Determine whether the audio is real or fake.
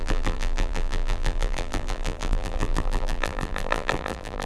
fake